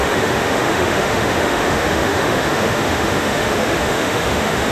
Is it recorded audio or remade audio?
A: remade